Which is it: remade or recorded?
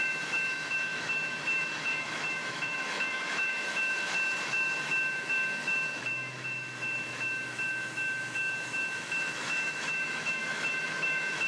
remade